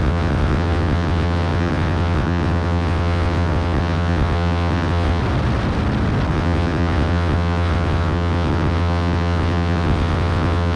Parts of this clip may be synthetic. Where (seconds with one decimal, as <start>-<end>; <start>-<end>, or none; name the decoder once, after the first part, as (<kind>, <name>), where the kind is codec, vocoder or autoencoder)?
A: 0.0-5.2 (vocoder, WaveNeXt); 6.3-10.8